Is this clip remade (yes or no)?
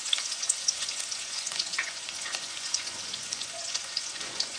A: yes